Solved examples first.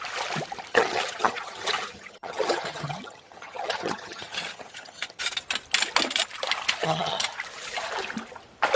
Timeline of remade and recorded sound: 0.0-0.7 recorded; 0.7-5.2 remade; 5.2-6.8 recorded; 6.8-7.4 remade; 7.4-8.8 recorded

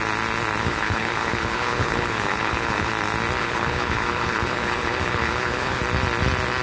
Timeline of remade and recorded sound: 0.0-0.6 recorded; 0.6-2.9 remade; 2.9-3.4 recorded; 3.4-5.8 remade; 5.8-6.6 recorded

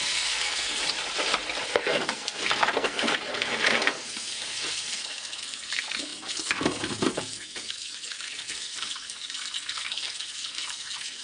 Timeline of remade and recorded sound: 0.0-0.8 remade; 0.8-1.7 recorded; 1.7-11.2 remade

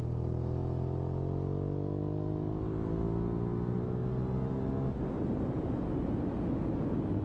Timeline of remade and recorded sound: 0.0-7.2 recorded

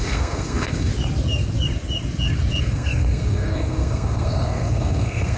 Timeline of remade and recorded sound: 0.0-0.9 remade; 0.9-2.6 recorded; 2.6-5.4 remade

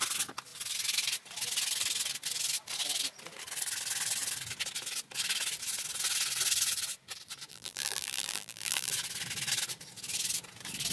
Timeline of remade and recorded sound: 0.0-7.5 recorded; 7.5-8.9 remade; 8.9-10.9 recorded

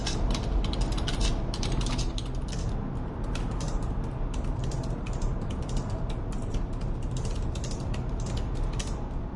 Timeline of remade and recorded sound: 0.0-9.4 recorded